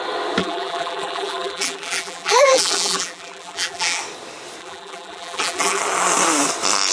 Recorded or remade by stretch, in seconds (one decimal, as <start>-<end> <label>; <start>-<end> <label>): 0.0-0.4 recorded; 0.4-4.0 remade; 4.0-4.6 recorded; 4.6-5.8 remade; 5.8-6.9 recorded